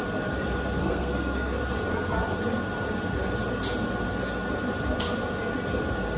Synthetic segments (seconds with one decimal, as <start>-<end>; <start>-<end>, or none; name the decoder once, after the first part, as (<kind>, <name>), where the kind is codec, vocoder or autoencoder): 0.8-1.6 (codec, SNAC)